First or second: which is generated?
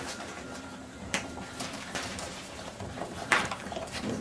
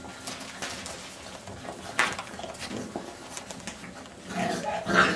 first